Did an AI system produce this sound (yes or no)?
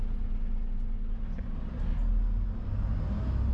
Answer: no